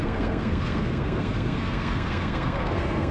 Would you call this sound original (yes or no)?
no